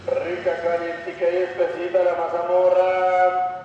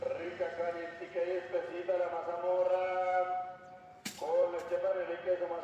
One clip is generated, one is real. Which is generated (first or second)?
second